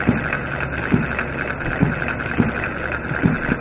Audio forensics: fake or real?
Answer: real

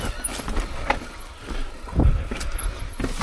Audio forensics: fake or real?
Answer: real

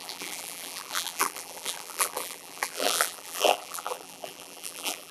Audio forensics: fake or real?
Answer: fake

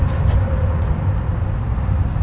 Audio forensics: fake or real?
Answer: real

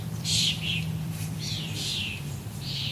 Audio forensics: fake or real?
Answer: fake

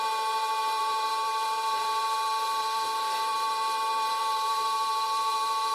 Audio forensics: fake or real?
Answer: fake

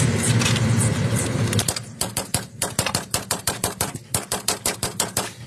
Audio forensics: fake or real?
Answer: fake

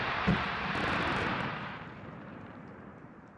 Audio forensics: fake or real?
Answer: fake